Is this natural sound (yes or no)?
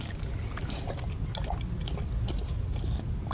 yes